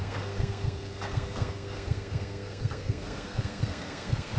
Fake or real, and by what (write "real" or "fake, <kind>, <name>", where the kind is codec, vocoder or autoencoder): fake, codec, SNAC